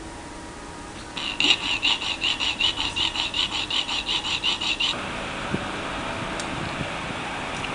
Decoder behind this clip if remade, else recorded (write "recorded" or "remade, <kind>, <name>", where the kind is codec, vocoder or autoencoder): recorded